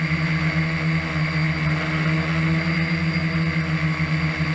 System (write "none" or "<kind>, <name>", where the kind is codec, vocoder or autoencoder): none